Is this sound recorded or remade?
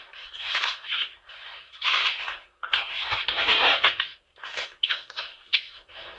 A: remade